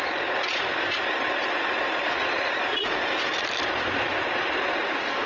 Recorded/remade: recorded